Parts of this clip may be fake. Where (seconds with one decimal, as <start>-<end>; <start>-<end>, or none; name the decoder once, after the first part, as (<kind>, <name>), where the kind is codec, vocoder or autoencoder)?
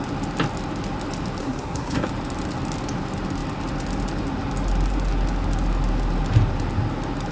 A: 1.4-2.1 (codec, SNAC)